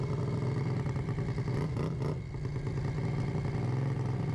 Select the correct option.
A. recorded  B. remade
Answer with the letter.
A